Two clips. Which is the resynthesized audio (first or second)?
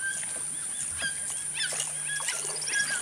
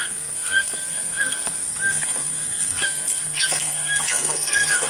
second